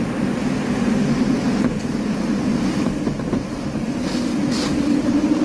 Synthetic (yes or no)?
no